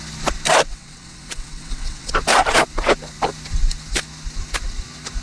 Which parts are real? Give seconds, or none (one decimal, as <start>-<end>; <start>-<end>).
0.0-0.7; 2.1-5.2